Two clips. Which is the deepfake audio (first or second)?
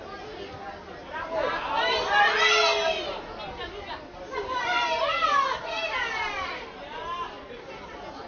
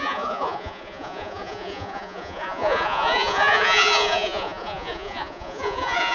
second